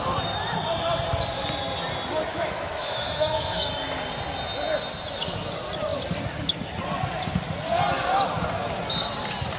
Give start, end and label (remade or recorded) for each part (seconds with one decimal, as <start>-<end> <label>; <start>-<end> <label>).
0.0-2.3 recorded; 2.3-3.7 remade; 3.7-9.6 recorded